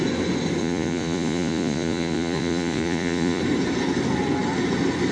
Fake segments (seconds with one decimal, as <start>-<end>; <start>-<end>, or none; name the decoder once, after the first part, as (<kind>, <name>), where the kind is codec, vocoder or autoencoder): 0.6-3.4 (vocoder, Vocos)

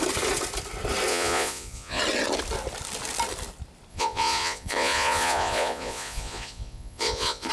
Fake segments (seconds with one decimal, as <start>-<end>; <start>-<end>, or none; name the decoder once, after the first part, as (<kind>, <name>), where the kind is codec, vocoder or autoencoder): 1.1-2.0 (vocoder, Vocos); 3.9-7.5

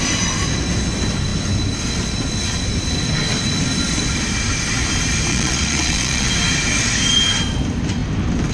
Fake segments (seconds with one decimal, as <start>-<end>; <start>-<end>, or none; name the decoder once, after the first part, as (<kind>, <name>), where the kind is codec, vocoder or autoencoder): 5.3-6.3 (vocoder, Vocos)

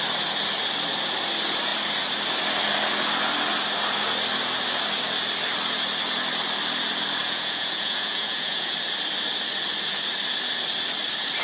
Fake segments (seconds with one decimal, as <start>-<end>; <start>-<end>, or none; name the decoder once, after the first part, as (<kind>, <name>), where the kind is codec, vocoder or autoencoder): 7.2-8.7 (vocoder, Vocos)

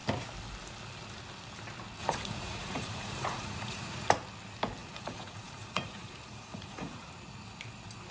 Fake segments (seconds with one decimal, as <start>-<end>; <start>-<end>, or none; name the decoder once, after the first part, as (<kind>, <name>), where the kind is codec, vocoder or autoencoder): 2.0-4.1 (vocoder, Vocos); 4.8-7.1

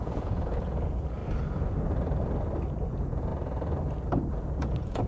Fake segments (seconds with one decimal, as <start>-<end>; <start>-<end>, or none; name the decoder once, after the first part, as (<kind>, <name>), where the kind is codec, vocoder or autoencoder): 0.0-1.2 (vocoder, Vocos); 2.9-3.3; 4.3-5.1